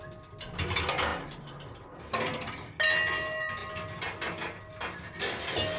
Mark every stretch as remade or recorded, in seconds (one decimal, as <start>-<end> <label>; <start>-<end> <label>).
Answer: 0.0-5.8 recorded